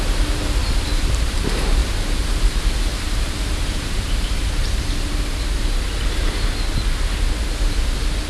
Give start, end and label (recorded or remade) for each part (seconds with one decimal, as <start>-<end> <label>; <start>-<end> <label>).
0.0-0.6 recorded; 0.6-1.4 remade; 1.4-1.8 recorded; 1.8-6.1 remade; 6.1-8.3 recorded